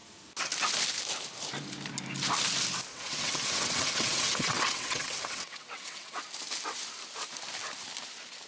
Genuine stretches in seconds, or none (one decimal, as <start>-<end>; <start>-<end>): 0.0-2.9; 6.2-8.5